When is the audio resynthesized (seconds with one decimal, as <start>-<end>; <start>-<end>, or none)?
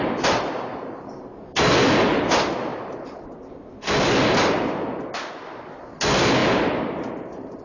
0.7-1.7